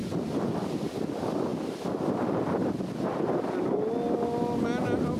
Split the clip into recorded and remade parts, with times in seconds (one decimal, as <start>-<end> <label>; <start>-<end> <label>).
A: 0.0-1.0 remade; 1.0-5.2 recorded